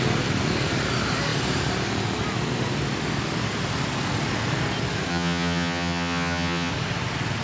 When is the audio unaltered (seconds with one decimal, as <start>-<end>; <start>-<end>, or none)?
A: 0.0-5.1; 6.7-7.4